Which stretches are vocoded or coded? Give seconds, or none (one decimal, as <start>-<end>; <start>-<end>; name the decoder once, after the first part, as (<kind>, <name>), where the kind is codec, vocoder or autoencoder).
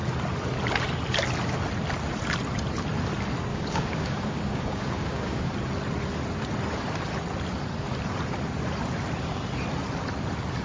3.5-5.5 (codec, DAC)